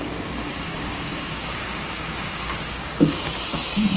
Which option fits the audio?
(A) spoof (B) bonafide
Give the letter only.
A